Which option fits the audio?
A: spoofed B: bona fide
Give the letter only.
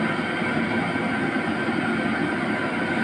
B